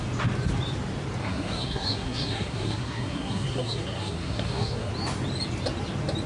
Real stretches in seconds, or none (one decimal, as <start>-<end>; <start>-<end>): 0.0-1.2; 4.9-6.3